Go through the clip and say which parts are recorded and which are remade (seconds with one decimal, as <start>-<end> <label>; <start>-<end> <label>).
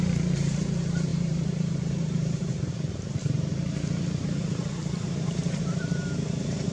0.0-3.5 remade; 3.5-4.2 recorded; 4.2-6.7 remade